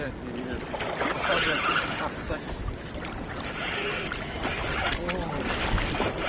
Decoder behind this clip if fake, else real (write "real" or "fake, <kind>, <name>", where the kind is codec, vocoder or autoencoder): real